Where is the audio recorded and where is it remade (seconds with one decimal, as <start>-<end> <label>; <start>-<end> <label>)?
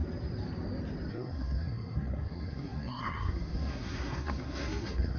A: 0.0-1.1 recorded; 1.1-5.2 remade